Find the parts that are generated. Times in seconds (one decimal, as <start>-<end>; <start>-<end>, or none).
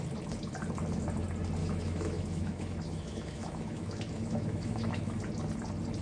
1.6-5.2